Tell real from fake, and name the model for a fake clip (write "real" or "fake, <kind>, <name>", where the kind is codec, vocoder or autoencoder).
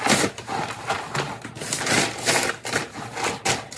real